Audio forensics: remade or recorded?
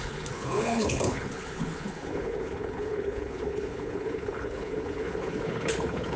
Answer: remade